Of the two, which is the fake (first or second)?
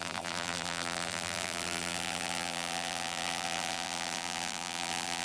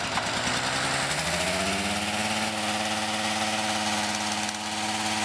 first